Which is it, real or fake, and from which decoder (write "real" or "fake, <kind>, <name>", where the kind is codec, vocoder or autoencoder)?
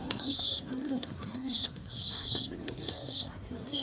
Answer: fake, codec, SNAC